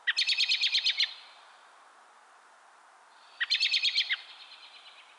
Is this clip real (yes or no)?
yes